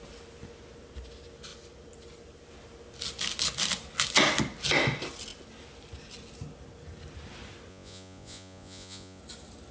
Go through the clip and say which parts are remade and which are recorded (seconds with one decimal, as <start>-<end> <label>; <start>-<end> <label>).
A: 0.0-7.7 recorded; 7.7-9.2 remade; 9.2-9.7 recorded